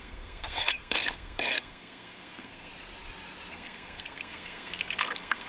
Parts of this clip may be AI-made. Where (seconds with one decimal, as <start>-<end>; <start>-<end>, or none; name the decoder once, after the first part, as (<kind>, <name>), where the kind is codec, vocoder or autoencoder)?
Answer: 0.0-2.7 (codec, SNAC); 3.5-5.5